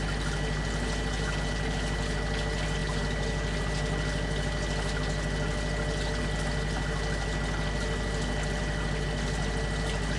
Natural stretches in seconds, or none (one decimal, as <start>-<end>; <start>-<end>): 0.0-10.2